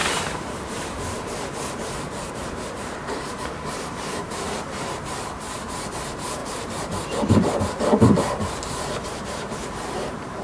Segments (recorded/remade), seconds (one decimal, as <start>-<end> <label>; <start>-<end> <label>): 0.0-10.4 remade